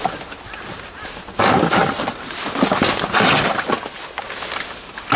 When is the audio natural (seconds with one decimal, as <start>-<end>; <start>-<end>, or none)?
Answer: 0.0-5.2